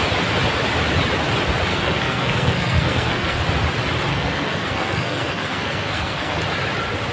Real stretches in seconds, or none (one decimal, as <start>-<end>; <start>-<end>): 0.0-1.7; 3.4-4.1; 6.4-7.1

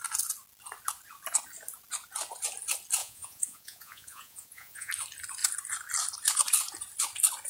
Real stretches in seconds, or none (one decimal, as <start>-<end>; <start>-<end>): 0.0-3.0; 4.9-7.5

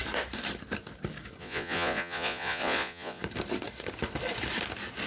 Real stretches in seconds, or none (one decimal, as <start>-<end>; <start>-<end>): 0.0-1.4; 3.2-5.1

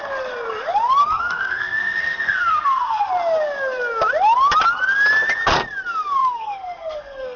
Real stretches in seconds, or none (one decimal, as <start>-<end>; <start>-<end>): 0.0-1.0; 3.1-6.2

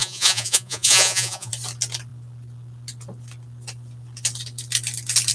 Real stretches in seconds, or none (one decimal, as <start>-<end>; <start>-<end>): 1.5-5.3